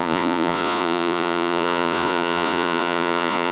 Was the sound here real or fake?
fake